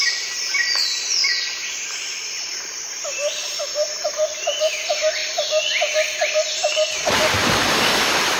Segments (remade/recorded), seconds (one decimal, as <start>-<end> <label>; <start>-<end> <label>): 0.0-1.2 remade; 1.2-2.4 recorded; 2.4-5.2 remade; 5.2-6.2 recorded; 6.2-8.4 remade